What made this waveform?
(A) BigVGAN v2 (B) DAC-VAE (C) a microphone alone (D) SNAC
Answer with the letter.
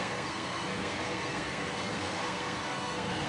D